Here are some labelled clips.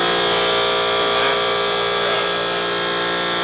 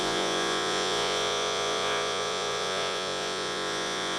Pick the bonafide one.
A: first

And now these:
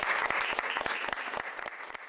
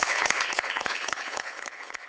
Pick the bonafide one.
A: first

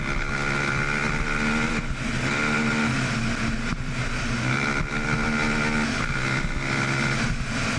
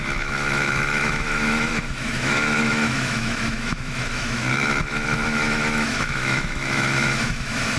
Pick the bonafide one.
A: first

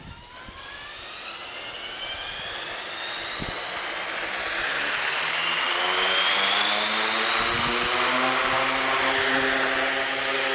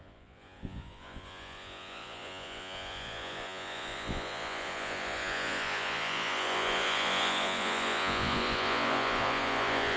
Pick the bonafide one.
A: first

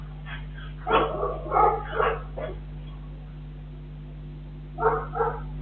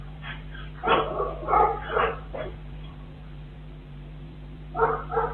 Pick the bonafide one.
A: first